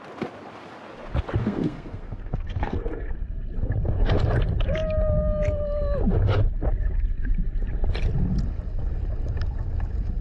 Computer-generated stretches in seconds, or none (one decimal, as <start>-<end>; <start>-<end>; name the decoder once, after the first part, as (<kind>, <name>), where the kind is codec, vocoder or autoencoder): 1.4-3.1 (codec, SNAC)